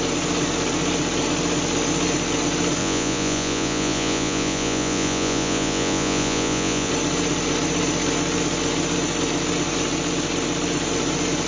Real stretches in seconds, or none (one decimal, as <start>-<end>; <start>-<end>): 0.0-2.8; 6.9-11.5